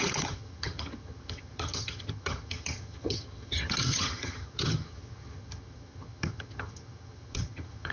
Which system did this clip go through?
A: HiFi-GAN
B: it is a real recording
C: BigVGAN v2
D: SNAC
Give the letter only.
A